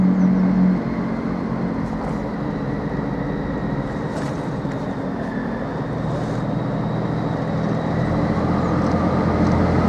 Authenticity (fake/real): real